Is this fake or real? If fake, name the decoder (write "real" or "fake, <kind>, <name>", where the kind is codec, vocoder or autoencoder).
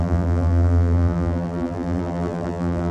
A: fake, vocoder, BigVGAN v2